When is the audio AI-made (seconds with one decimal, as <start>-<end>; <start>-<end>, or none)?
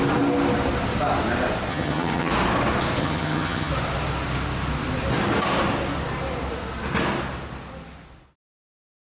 1.7-2.3; 3.0-3.7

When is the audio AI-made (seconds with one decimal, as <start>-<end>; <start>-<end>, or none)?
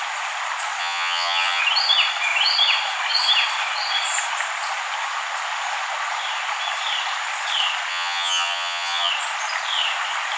0.8-1.6; 7.9-9.1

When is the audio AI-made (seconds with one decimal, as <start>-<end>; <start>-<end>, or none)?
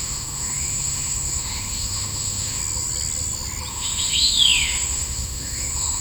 0.0-2.6; 3.7-6.0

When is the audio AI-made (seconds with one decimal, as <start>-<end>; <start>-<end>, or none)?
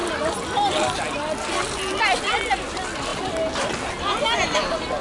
none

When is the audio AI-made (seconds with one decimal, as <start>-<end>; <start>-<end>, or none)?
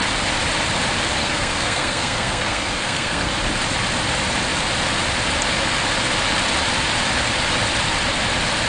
1.2-3.3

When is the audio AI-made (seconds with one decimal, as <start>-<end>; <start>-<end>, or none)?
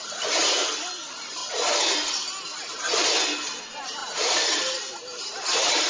0.0-1.4; 3.6-5.9